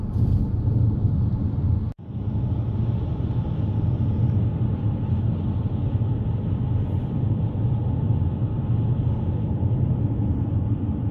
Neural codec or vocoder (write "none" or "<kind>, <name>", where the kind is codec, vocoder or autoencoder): none